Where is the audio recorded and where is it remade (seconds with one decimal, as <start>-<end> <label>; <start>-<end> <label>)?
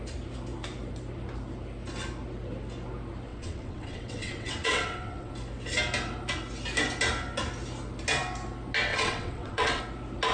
0.0-3.3 recorded; 3.3-5.3 remade; 5.3-8.9 recorded; 8.9-9.8 remade; 9.8-10.3 recorded